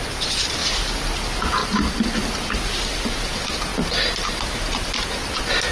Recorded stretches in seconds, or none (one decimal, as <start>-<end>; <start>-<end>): 0.0-1.6; 2.2-5.7